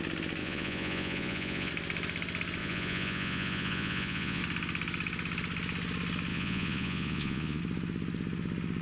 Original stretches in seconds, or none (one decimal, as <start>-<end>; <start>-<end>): 0.0-0.4; 1.7-2.6; 4.4-6.3; 7.6-8.8